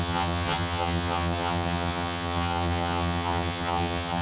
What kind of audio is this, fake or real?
fake